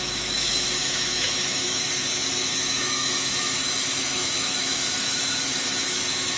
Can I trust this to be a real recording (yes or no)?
no